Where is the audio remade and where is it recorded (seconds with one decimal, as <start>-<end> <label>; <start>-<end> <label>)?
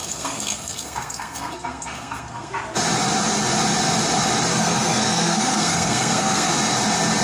0.0-2.5 remade; 2.5-4.5 recorded; 4.5-6.5 remade; 6.5-7.2 recorded